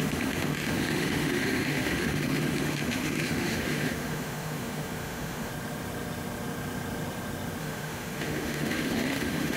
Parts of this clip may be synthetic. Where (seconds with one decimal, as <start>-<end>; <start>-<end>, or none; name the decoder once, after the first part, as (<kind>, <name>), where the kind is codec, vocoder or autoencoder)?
0.0-5.5 (autoencoder, DAC-VAE); 7.6-9.6